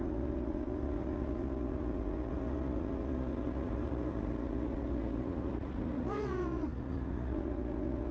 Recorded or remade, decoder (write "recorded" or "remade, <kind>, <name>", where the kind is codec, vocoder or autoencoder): remade, vocoder, Vocos